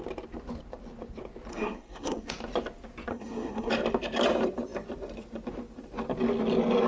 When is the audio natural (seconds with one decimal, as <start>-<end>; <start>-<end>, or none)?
0.0-1.5; 2.3-3.1; 3.7-6.9